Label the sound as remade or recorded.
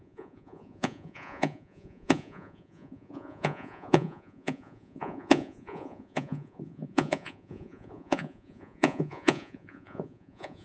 remade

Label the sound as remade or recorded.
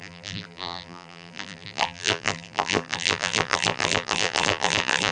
remade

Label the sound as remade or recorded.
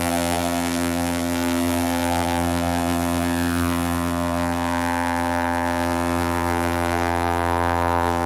remade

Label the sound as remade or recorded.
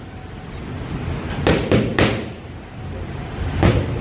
recorded